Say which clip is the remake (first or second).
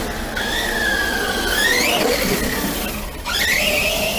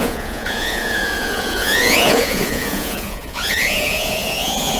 second